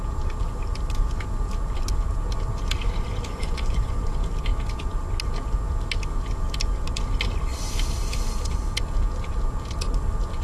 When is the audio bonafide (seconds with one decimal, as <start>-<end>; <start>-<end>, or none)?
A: 0.0-3.3; 4.0-10.4